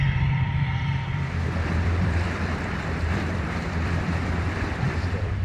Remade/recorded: remade